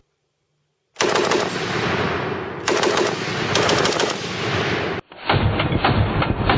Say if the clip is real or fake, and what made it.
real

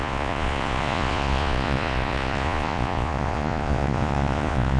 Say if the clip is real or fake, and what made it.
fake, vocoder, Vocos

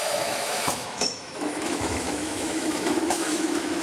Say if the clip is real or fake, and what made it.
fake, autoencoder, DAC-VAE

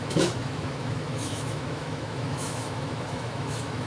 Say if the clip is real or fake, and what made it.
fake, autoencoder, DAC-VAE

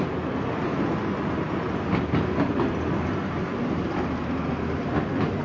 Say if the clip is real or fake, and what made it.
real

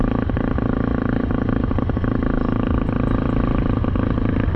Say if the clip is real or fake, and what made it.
real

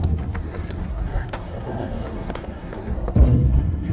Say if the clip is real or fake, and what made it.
fake, codec, SNAC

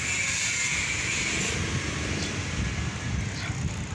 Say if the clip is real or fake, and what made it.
real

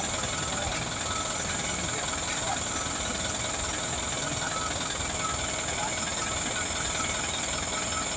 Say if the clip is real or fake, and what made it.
real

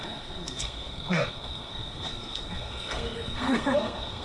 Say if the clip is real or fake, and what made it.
fake, codec, SNAC